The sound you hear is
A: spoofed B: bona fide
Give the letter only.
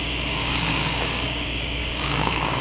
A